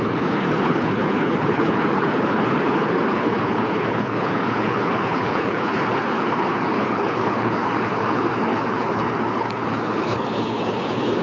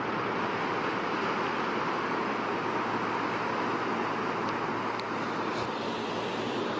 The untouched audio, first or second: second